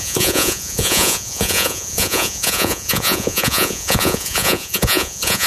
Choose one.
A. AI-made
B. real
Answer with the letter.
A